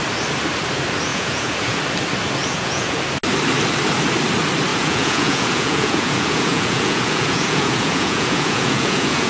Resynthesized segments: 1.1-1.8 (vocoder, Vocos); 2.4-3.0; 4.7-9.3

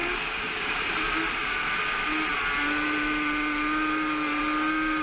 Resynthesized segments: 0.0-0.8 (codec, DAC)

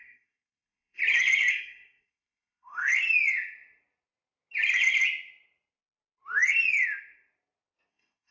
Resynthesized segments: 0.0-1.0 (codec, SNAC); 1.5-2.9; 7.9-8.3

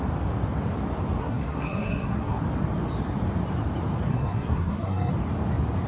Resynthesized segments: 1.2-2.4 (codec, SNAC); 4.1-5.1